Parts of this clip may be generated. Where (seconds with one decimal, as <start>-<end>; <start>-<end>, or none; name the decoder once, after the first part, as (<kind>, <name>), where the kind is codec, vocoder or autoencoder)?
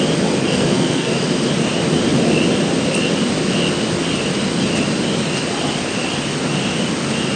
0.4-1.1 (codec, SNAC)